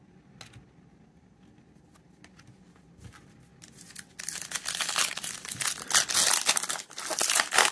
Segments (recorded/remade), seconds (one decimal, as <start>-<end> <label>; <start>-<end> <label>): 0.0-7.7 recorded